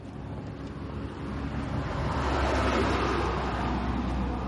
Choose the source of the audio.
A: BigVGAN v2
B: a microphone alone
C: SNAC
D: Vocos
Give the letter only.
B